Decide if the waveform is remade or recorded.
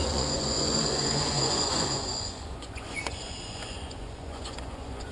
remade